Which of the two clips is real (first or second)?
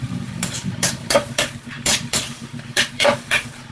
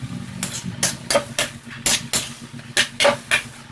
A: second